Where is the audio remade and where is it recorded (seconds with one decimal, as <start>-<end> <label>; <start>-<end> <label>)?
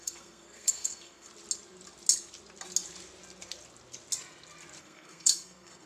0.0-1.3 remade; 1.3-4.8 recorded; 4.8-5.9 remade